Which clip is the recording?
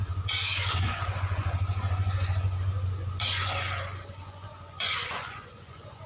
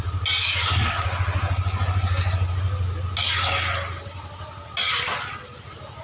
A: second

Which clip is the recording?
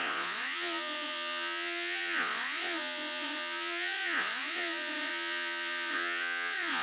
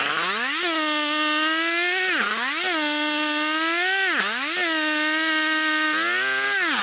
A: second